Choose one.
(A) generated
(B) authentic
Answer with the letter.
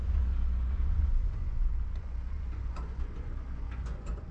A